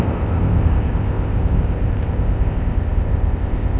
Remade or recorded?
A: remade